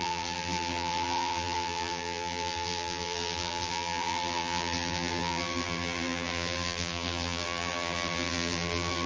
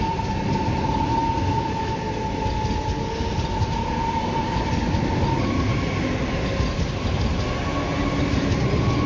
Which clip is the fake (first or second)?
first